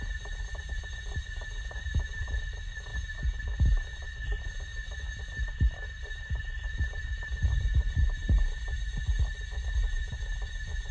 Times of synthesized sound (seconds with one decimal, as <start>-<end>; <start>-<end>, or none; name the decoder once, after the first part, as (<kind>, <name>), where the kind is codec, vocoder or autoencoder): 0.0-2.9 (vocoder, BigVGAN v2); 3.9-4.7; 5.2-10.9